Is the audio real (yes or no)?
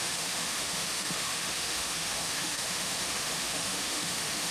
no